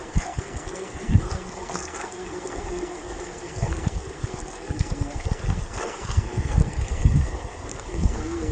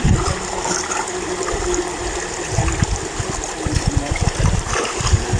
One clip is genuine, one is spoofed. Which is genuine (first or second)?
second